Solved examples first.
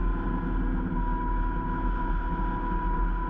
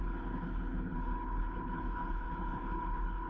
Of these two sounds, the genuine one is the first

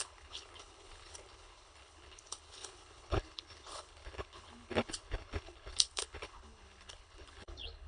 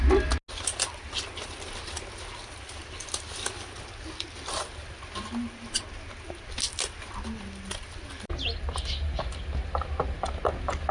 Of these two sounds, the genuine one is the second